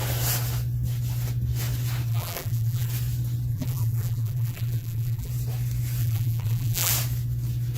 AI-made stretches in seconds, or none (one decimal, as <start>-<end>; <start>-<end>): 2.1-2.9; 3.5-5.3; 6.0-6.9

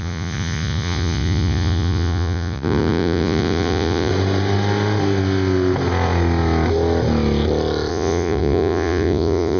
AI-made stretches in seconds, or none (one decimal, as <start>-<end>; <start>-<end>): 0.0-4.1; 7.9-9.6

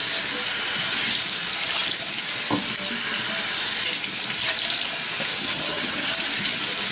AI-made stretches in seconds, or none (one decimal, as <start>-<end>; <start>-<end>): 5.3-6.1

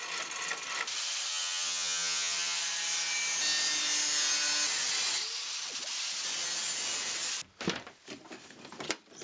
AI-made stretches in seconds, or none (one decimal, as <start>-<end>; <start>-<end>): 1.3-2.6